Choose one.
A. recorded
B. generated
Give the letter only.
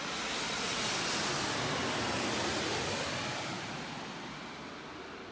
A